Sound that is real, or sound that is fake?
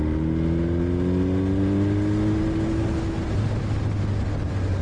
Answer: real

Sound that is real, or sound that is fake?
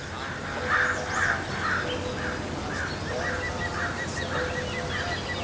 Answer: real